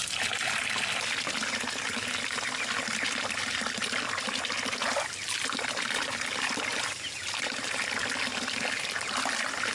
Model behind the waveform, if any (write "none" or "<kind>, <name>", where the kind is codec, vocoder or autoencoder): none